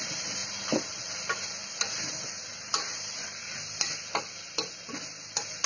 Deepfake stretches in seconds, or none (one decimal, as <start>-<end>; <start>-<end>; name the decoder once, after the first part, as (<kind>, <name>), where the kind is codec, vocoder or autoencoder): none